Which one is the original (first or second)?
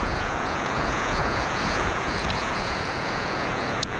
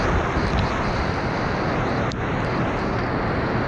second